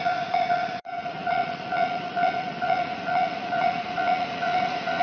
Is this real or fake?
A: fake